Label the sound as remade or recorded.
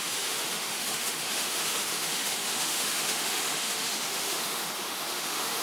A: remade